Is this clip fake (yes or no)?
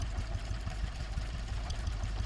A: yes